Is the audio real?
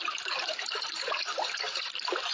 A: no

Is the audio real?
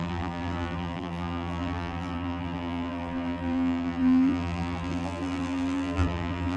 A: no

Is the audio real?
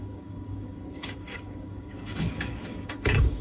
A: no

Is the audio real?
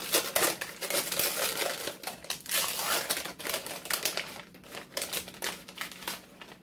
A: yes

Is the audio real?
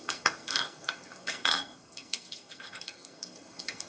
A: no